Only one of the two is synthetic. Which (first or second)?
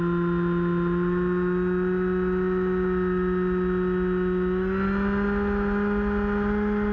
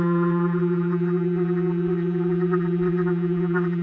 second